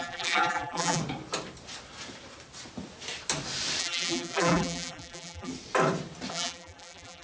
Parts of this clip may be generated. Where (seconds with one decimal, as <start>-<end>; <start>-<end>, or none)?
0.0-1.0; 3.8-5.5; 6.3-7.2